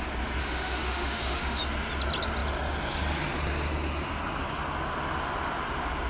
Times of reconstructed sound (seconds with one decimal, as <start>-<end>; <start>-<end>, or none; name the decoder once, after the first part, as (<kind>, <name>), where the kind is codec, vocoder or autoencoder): 0.4-1.6 (autoencoder, DAC-VAE)